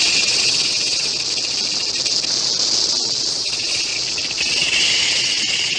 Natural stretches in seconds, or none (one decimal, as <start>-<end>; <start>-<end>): 1.1-3.3; 3.9-4.4

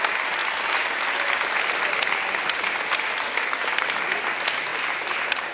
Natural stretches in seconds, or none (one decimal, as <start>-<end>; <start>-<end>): 0.0-5.5

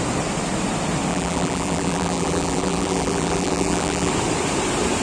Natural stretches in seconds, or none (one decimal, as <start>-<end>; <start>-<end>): 0.0-1.1; 4.1-5.0

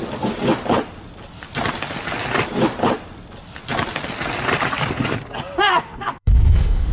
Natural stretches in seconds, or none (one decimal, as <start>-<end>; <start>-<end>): 0.0-5.6

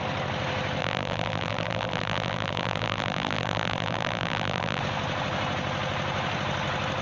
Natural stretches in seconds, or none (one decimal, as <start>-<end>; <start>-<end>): 0.0-0.8; 4.8-7.0